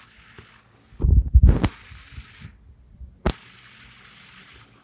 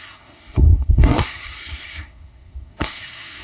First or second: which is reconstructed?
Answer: second